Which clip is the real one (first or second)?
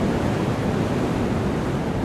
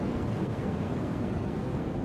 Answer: first